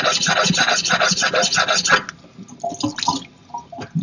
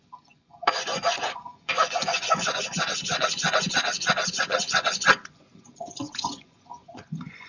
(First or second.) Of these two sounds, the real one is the first